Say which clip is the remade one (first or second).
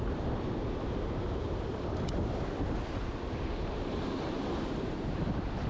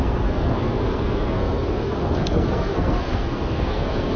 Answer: second